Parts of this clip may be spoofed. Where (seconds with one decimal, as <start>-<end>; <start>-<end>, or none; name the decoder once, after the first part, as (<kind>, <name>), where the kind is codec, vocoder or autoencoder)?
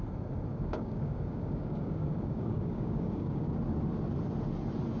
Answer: 0.5-3.5 (codec, DAC)